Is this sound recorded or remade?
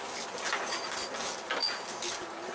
recorded